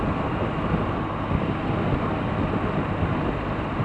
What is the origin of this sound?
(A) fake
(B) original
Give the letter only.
B